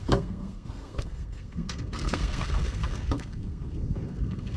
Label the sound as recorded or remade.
remade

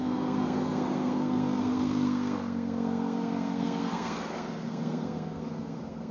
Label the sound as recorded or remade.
remade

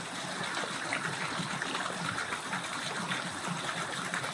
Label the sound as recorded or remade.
recorded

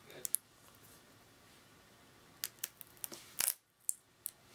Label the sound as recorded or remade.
recorded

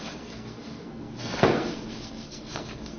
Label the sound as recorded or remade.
remade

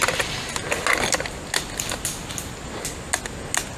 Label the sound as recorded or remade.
recorded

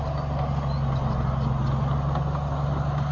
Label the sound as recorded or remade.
recorded